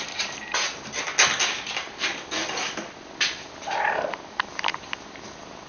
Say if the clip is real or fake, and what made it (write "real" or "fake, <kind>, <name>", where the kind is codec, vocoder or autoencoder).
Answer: real